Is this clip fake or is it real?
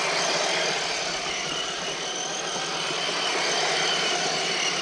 real